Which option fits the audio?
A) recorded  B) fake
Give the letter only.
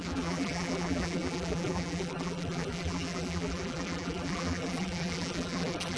B